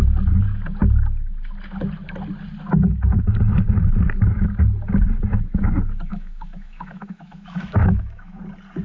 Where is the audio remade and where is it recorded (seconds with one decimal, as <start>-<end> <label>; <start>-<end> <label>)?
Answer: 0.0-6.1 recorded; 6.1-8.4 remade; 8.4-8.8 recorded